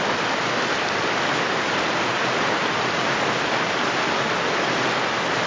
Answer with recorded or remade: recorded